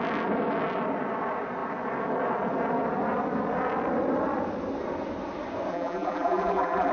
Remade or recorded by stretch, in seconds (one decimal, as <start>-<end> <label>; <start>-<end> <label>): 0.0-5.7 recorded; 5.7-6.9 remade